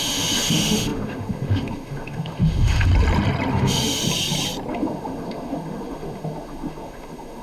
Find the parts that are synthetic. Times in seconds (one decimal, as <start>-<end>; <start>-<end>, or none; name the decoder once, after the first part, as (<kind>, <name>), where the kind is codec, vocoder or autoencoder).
0.0-2.9 (autoencoder, DAC-VAE); 3.5-4.0; 4.7-7.4